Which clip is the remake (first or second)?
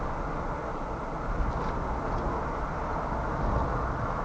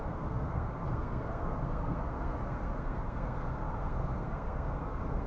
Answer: second